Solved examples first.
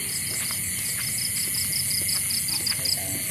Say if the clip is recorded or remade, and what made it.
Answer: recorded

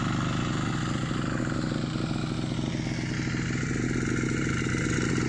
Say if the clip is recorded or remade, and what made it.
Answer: recorded